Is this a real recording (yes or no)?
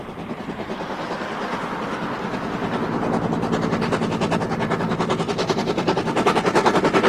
yes